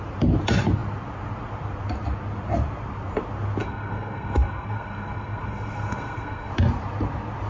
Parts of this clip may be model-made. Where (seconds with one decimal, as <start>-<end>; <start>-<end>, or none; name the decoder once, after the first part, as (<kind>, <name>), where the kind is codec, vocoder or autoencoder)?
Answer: 3.6-6.5 (codec, SNAC)

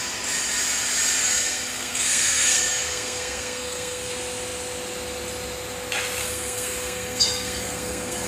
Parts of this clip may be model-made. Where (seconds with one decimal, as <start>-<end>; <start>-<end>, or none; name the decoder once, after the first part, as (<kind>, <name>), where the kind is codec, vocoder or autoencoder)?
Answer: 1.2-4.1 (codec, SNAC); 6.2-8.3

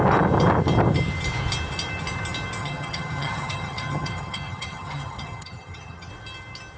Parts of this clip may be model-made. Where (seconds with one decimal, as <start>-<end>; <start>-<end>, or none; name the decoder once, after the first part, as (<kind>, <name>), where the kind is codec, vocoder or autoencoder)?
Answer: 2.6-6.1 (vocoder, HiFi-GAN)

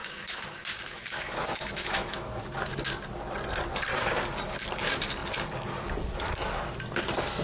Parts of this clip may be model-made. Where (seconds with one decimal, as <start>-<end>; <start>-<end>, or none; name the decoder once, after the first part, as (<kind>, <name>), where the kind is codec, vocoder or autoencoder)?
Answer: 0.0-2.4 (autoencoder, DAC-VAE)